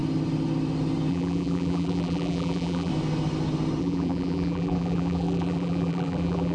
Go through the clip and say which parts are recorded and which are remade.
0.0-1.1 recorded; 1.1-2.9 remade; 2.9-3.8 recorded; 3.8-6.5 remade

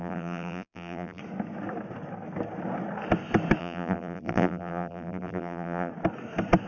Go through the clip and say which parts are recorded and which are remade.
0.0-1.2 remade; 1.2-3.6 recorded; 3.6-5.9 remade; 5.9-6.7 recorded

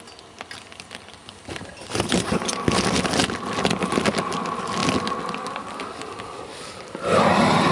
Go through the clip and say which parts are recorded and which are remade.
0.0-1.2 recorded; 1.2-3.2 remade; 3.2-7.7 recorded

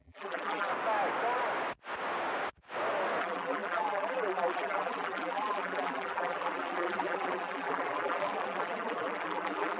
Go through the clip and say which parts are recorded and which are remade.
0.0-0.7 remade; 0.7-3.2 recorded; 3.2-9.8 remade

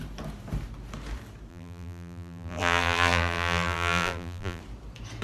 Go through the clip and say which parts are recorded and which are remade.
0.0-1.5 recorded; 1.5-4.6 remade; 4.6-5.2 recorded